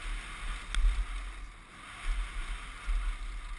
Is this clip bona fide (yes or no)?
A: yes